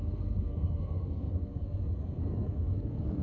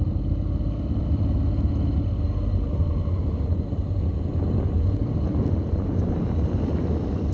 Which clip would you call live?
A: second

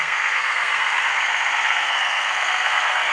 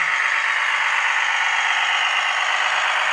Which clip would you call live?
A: second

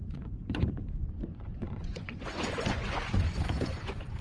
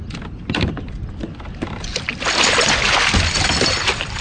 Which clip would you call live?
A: second